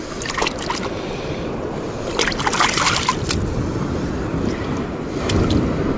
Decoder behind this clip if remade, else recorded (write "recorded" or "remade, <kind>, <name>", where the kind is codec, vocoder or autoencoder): recorded